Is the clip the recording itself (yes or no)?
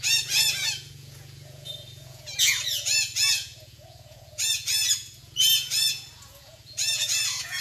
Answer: no